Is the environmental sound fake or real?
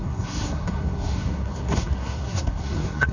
fake